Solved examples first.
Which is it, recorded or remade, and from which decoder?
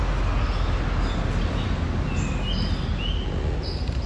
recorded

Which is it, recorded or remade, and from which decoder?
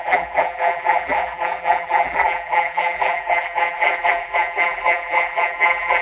remade, vocoder, BigVGAN v2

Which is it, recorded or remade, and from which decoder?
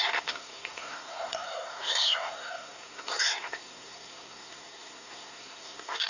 remade, codec, SNAC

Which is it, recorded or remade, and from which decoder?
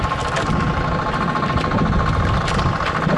recorded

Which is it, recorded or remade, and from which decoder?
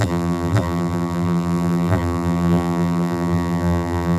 remade, vocoder, BigVGAN v2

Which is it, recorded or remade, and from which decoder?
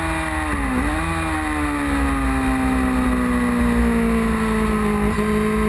recorded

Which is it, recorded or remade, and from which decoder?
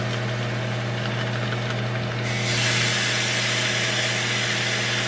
recorded